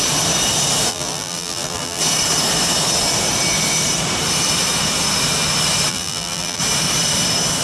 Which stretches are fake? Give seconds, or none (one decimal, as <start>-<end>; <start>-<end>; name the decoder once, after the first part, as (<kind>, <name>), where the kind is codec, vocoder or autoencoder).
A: 0.9-2.0 (vocoder, BigVGAN v2); 5.9-6.6